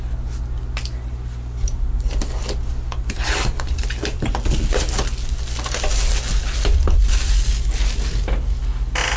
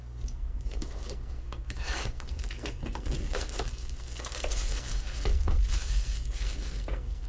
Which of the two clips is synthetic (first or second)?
second